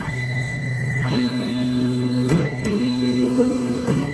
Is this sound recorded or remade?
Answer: remade